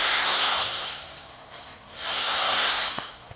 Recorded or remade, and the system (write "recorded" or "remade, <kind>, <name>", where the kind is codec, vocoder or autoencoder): remade, codec, SNAC